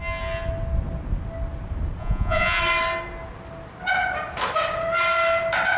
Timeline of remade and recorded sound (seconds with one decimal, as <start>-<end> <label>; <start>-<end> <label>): 0.0-2.0 recorded; 2.0-2.6 remade; 2.6-5.8 recorded